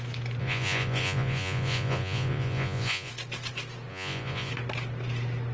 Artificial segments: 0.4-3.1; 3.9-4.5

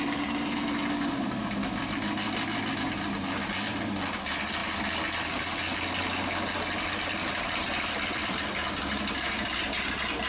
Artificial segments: none

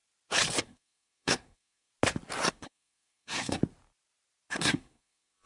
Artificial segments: 0.6-1.9; 2.5-3.6; 4.5-5.5

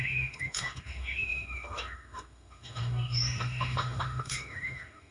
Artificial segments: 0.0-5.1

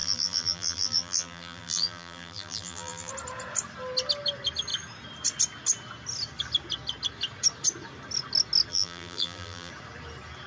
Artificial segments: 0.0-3.1; 8.7-9.7

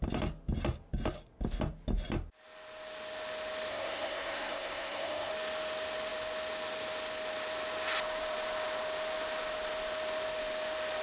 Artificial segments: 3.7-5.3